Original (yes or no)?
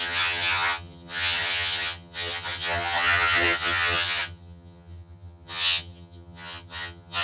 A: no